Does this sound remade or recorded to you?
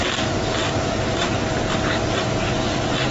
recorded